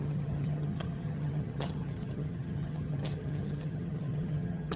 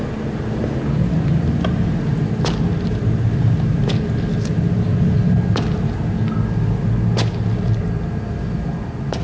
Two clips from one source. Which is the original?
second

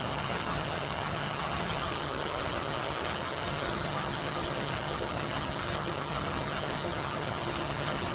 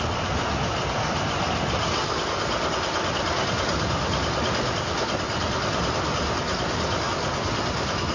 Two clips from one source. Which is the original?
second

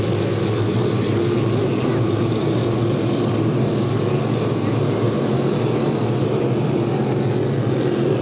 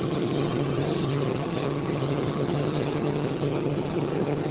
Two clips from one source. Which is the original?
first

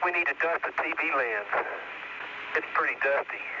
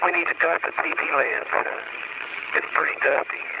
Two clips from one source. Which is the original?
first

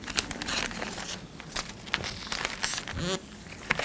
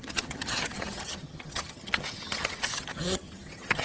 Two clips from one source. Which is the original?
first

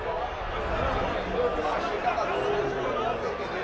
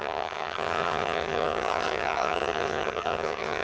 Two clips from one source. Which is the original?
first